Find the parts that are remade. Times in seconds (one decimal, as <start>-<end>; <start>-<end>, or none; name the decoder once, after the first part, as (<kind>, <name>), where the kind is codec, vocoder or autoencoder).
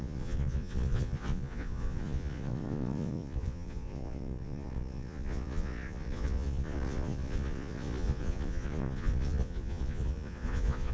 0.0-10.9 (vocoder, Vocos)